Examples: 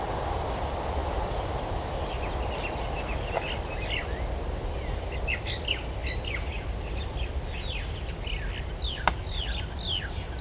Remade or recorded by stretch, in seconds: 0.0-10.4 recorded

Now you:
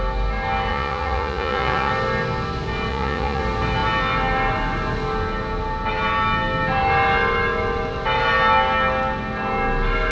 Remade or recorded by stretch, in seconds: 0.0-0.7 recorded; 0.7-1.9 remade; 1.9-2.9 recorded; 2.9-3.4 remade; 3.4-10.1 recorded

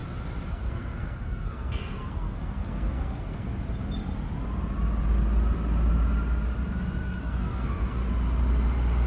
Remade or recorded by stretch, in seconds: 0.0-0.5 recorded; 0.5-3.5 remade; 3.5-7.2 recorded; 7.2-8.0 remade; 8.0-9.1 recorded

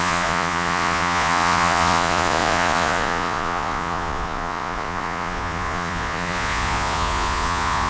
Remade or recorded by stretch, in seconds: 0.0-7.9 remade